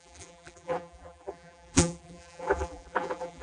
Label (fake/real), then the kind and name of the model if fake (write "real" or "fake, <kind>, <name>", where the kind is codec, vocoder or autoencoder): fake, vocoder, BigVGAN v2